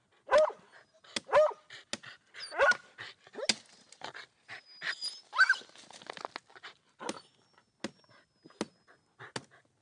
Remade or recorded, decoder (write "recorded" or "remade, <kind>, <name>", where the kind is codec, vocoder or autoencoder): recorded